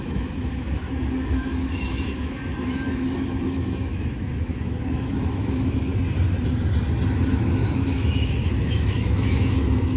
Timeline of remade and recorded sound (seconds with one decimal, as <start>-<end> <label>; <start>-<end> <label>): 0.0-5.9 remade; 5.9-7.2 recorded; 7.2-10.0 remade